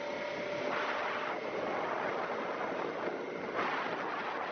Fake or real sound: real